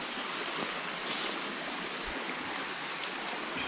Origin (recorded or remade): recorded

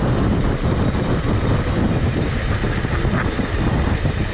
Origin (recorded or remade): remade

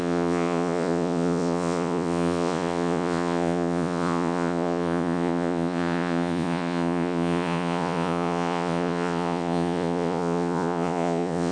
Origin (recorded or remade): remade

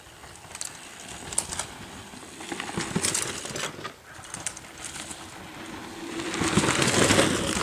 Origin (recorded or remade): recorded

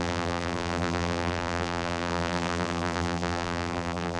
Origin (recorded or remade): remade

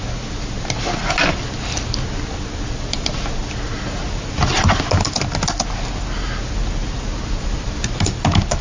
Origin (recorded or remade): recorded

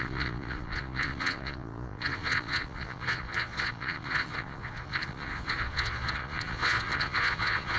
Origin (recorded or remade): remade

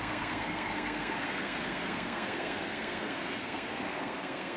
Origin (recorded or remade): remade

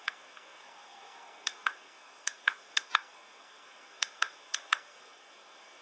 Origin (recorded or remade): remade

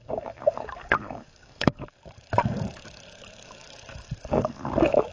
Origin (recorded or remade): remade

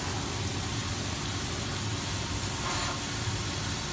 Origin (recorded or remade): recorded